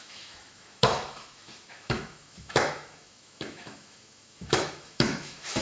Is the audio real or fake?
fake